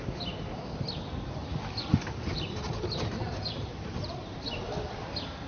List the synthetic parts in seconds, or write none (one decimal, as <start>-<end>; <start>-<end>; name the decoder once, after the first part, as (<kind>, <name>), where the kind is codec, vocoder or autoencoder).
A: 1.4-4.4 (vocoder, BigVGAN v2)